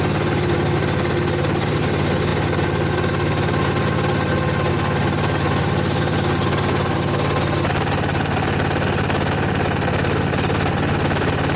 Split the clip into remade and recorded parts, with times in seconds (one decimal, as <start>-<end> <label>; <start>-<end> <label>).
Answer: 0.0-11.6 recorded